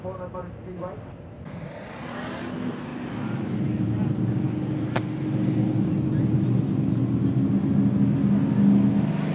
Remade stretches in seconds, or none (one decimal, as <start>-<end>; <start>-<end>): none

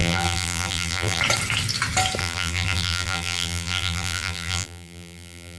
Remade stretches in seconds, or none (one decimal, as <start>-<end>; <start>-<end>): 0.0-1.2; 2.2-5.6

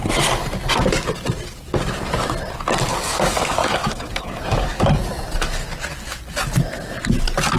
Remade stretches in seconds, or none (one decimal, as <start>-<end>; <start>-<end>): 2.9-5.0

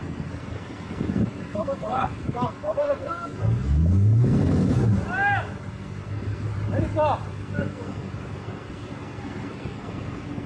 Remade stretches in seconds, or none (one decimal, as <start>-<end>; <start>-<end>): 0.0-4.8; 5.7-6.5; 7.3-10.5

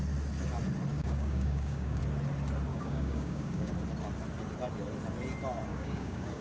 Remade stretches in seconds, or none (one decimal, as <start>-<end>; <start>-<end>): 0.9-2.0; 2.7-3.7; 5.7-6.4